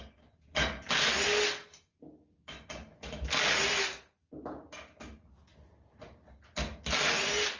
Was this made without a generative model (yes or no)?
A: yes